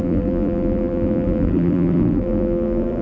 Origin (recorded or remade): remade